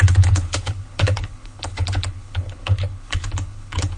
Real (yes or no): no